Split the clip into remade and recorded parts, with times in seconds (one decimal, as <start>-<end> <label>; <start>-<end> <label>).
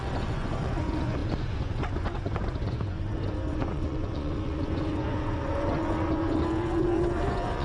0.0-7.6 remade